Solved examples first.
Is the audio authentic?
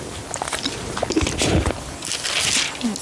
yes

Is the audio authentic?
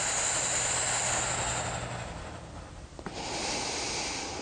yes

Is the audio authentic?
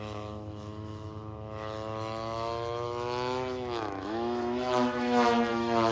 no